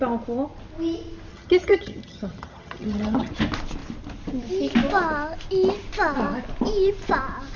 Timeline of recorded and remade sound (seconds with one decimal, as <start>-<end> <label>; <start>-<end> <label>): 0.0-1.3 recorded; 1.3-3.3 remade; 3.3-7.6 recorded